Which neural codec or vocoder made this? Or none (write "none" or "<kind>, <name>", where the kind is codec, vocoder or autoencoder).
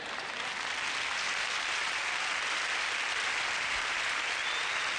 none